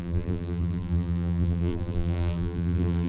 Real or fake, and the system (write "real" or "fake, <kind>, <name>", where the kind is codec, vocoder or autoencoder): fake, vocoder, BigVGAN v2